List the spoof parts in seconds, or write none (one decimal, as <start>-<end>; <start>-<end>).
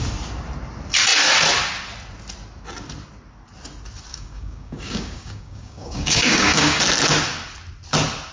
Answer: 4.1-6.8